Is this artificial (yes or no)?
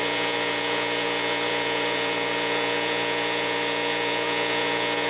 yes